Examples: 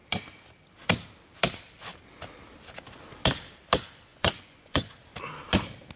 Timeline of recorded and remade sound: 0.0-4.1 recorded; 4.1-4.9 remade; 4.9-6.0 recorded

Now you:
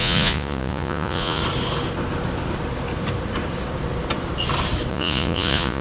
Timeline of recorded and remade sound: 0.0-1.4 remade; 1.4-4.9 recorded; 4.9-5.8 remade

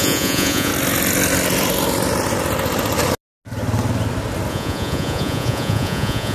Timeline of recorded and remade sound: 0.0-0.7 remade; 0.7-4.5 recorded; 4.5-6.3 remade

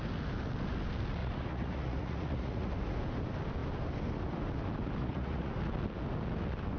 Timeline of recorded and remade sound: 0.0-1.2 recorded; 1.2-2.7 remade; 2.7-5.0 recorded; 5.0-5.5 remade; 5.5-6.8 recorded

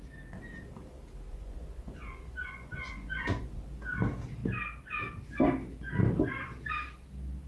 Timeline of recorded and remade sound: 0.0-1.3 recorded; 1.3-3.7 remade; 3.7-7.5 recorded

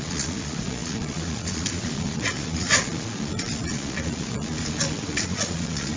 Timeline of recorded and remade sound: 0.0-6.0 remade